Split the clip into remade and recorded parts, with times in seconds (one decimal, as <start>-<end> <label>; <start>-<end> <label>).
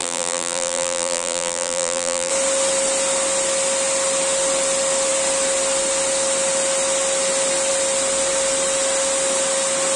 0.0-2.3 remade; 2.3-10.0 recorded